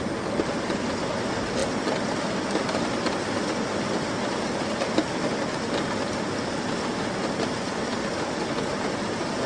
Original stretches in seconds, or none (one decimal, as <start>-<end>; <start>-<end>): 0.0-9.5